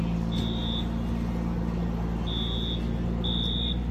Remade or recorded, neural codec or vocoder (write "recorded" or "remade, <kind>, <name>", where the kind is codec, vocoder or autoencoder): recorded